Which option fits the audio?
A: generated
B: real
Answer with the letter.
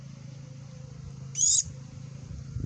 B